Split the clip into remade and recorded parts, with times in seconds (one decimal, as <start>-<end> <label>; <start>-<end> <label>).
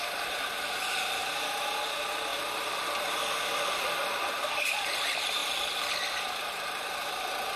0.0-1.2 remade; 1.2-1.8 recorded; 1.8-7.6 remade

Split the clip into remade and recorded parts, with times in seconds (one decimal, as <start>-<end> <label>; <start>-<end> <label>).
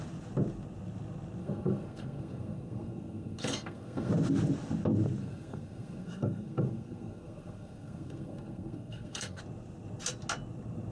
0.0-1.4 recorded; 1.4-4.1 remade; 4.1-5.2 recorded; 5.2-9.4 remade; 9.4-10.9 recorded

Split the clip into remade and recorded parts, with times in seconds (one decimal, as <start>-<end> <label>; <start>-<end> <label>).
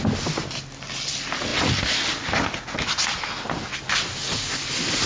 0.0-5.1 recorded